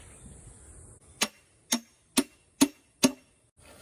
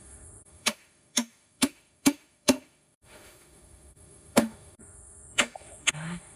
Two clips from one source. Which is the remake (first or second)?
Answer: second